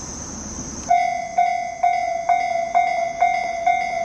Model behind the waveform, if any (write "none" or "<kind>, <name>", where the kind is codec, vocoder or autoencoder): none